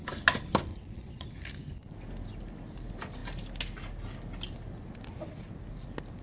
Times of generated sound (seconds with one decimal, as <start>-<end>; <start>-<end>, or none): 0.7-1.3